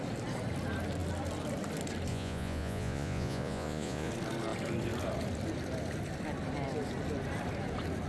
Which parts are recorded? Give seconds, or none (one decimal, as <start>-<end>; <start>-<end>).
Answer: 0.0-2.1; 4.1-8.1